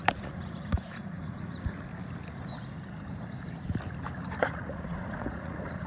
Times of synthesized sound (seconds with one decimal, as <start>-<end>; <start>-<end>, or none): 0.0-1.9; 4.4-5.9